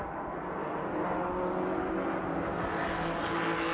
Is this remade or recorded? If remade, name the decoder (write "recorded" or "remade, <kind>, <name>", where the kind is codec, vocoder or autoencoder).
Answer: recorded